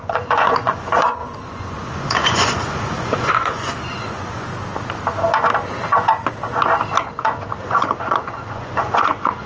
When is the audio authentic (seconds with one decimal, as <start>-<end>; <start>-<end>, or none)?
4.5-7.6